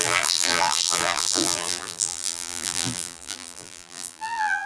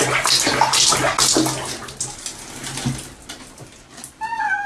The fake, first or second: first